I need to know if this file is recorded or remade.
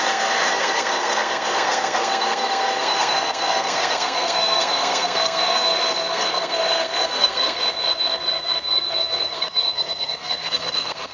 remade